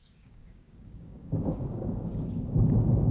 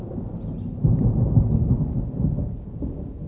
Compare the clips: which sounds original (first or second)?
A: second